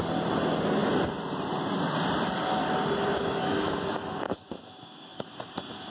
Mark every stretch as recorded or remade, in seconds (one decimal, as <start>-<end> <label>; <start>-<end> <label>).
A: 0.0-3.2 recorded; 3.2-5.3 remade; 5.3-5.9 recorded